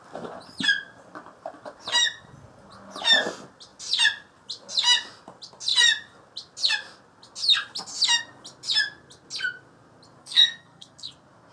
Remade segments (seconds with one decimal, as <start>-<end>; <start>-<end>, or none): 10.2-11.1